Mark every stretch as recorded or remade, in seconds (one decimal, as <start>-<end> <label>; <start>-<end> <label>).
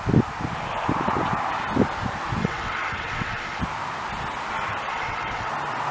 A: 0.0-2.4 recorded; 2.4-3.6 remade; 3.6-4.9 recorded; 4.9-5.5 remade; 5.5-5.9 recorded